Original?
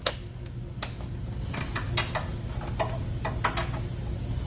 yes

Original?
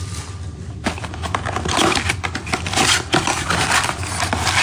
yes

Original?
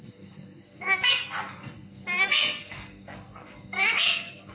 no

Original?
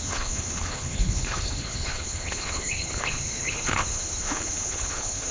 no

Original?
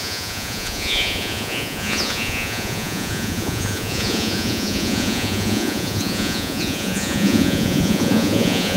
no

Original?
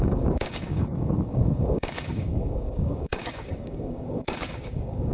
no